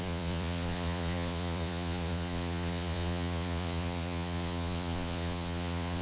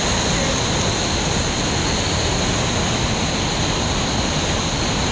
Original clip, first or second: second